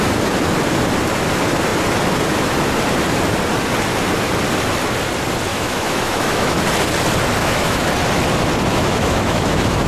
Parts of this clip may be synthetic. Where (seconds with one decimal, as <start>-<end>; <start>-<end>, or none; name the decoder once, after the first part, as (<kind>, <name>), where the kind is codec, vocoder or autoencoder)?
5.5-6.6 (autoencoder, DAC-VAE); 7.4-7.9; 8.7-9.9